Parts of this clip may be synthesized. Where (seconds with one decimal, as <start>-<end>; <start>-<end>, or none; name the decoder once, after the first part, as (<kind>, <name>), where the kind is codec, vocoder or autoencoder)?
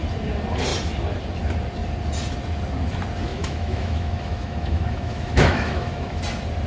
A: 3.3-6.2 (autoencoder, DAC-VAE)